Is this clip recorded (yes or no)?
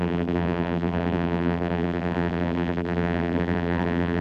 no